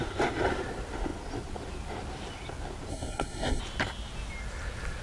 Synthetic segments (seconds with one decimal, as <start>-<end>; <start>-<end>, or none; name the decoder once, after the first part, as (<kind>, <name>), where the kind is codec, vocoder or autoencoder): 2.9-3.6 (codec, SNAC)

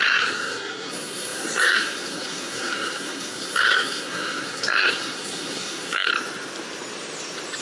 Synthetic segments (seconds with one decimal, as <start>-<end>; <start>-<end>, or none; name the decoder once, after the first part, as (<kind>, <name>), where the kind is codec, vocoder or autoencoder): 0.0-6.1 (codec, SNAC)